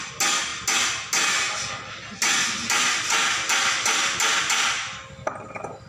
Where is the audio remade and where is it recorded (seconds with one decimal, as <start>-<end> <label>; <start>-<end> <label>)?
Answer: 0.0-5.9 recorded